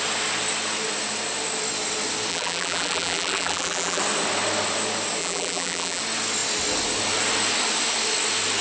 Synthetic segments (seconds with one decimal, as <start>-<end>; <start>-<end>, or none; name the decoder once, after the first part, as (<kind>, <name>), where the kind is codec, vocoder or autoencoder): 2.3-4.0 (vocoder, BigVGAN v2); 5.2-6.0